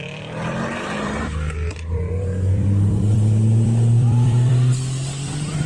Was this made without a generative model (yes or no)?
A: no